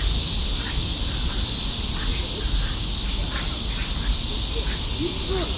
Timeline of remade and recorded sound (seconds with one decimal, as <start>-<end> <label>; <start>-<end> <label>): 0.0-5.6 recorded